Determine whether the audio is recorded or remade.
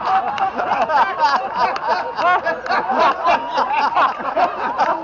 recorded